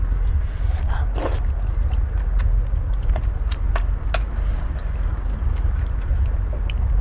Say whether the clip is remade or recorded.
recorded